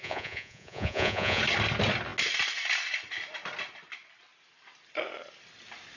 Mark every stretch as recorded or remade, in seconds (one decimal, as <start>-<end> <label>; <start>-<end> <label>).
0.0-1.4 remade; 1.4-6.0 recorded

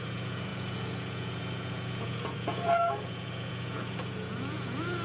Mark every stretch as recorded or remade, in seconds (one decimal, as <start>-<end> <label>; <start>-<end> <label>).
0.0-5.0 remade

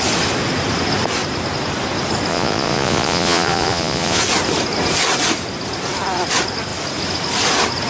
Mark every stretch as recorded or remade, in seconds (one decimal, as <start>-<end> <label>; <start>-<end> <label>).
0.0-2.3 recorded; 2.3-4.2 remade; 4.2-7.9 recorded

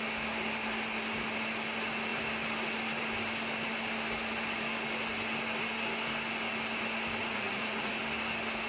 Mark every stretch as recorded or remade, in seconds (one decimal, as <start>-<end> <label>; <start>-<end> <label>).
0.0-7.2 recorded; 7.2-8.0 remade; 8.0-8.7 recorded